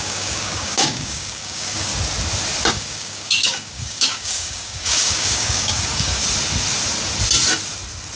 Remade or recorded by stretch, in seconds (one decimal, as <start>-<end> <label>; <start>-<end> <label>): 0.0-1.9 remade; 1.9-2.7 recorded; 2.7-6.2 remade; 6.2-8.2 recorded